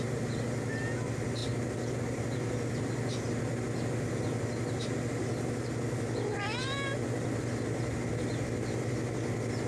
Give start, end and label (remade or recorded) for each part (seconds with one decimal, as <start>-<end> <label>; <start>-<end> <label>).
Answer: 0.0-9.7 recorded